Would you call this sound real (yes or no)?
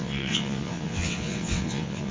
no